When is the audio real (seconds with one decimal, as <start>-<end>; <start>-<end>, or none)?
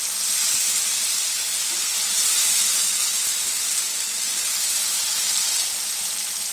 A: 0.0-6.5